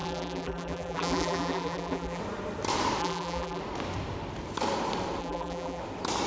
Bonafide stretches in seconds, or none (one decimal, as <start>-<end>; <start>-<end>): 2.2-3.0; 3.6-5.2; 5.8-6.3